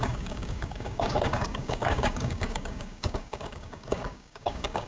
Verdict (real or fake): fake